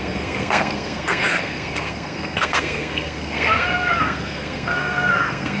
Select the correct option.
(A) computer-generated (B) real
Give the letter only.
A